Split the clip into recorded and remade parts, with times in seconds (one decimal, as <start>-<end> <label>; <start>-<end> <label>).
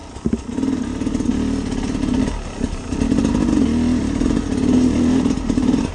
0.0-4.0 recorded; 4.0-5.9 remade